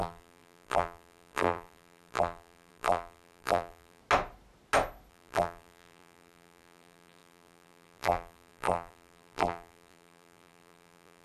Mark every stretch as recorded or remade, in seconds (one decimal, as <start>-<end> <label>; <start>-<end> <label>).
0.0-4.0 remade; 4.0-5.1 recorded; 5.1-11.2 remade